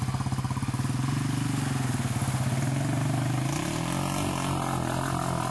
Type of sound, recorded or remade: recorded